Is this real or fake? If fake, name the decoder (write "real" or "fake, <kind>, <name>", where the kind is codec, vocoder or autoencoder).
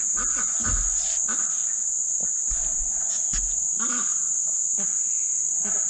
real